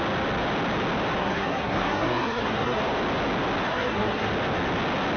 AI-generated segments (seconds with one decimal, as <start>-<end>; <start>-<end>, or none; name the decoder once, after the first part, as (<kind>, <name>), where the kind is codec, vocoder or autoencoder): 1.2-2.8 (codec, SNAC); 3.7-4.3